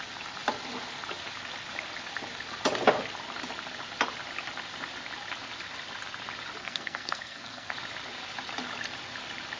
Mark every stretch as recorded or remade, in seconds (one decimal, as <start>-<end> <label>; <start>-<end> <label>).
0.0-6.6 recorded; 6.6-7.7 remade; 7.7-9.6 recorded

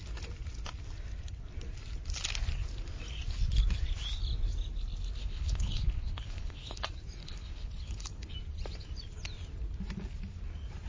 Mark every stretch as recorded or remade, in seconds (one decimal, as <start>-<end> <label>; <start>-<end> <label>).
0.0-5.2 recorded; 5.2-6.8 remade; 6.8-7.2 recorded; 7.2-8.3 remade; 8.3-10.9 recorded

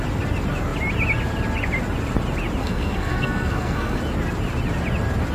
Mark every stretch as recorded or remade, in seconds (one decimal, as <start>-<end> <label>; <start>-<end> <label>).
0.0-2.6 recorded; 2.6-4.0 remade; 4.0-5.3 recorded

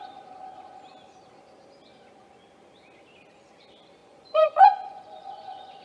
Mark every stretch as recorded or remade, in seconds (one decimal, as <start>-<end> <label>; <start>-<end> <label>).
0.0-4.0 recorded; 4.0-5.8 remade

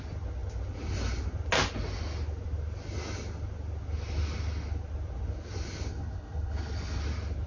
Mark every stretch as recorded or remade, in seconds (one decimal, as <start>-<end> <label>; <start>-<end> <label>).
0.0-5.9 recorded; 5.9-7.0 remade; 7.0-7.5 recorded

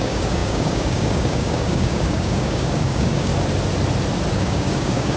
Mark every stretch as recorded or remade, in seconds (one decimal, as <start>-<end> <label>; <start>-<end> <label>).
0.0-3.3 remade; 3.3-4.3 recorded; 4.3-5.2 remade